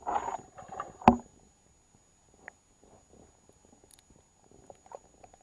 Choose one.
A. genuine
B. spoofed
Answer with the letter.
A